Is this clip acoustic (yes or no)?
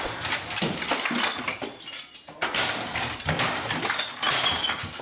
yes